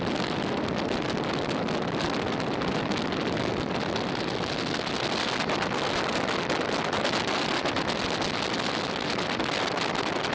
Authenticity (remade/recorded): recorded